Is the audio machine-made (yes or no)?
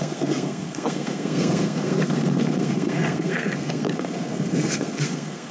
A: yes